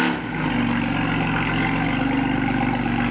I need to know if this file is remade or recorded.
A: recorded